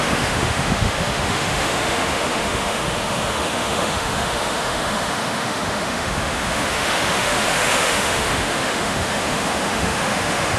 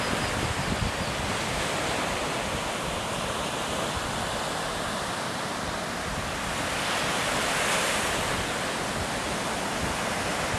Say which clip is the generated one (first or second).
first